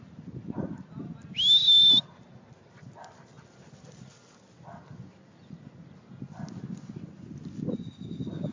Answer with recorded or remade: recorded